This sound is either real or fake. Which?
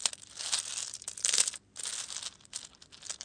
real